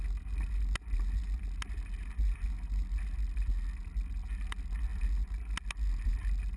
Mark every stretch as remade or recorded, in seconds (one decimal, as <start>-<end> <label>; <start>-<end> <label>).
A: 0.0-6.6 recorded